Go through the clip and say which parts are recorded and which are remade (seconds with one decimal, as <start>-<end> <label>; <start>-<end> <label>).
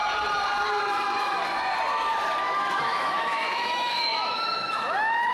0.0-0.7 recorded; 0.7-1.4 remade; 1.4-2.8 recorded; 2.8-5.3 remade